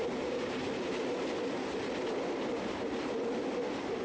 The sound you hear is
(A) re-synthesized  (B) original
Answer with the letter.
B